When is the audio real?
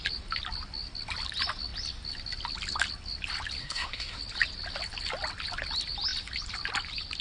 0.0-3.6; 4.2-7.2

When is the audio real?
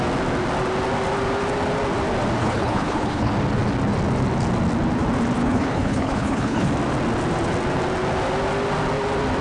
0.0-2.4; 3.3-5.4; 6.7-9.4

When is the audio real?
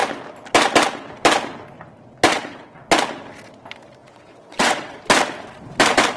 0.0-2.3; 2.9-4.0; 5.0-6.2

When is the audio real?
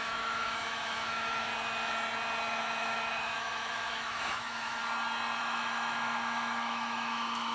1.5-2.6; 4.8-5.4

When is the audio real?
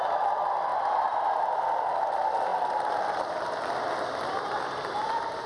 0.0-5.5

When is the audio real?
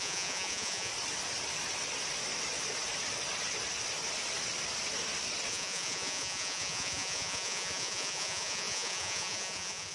0.9-5.5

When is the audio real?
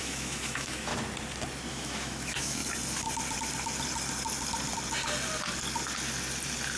0.9-1.7; 2.6-6.8